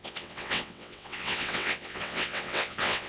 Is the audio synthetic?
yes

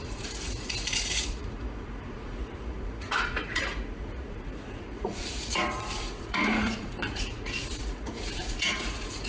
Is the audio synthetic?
yes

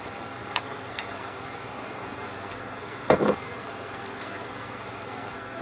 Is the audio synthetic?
yes